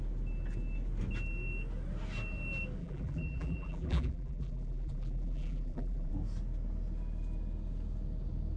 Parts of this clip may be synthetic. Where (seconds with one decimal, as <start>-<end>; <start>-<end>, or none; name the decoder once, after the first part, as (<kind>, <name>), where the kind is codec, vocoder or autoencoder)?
2.8-6.1 (vocoder, BigVGAN v2)